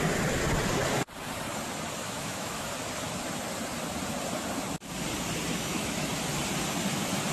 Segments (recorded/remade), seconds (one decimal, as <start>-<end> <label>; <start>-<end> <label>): 0.0-2.0 recorded; 2.0-2.7 remade; 2.7-5.5 recorded; 5.5-6.1 remade; 6.1-7.3 recorded